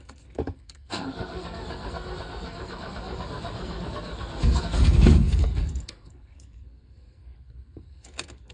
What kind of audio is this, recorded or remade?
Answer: remade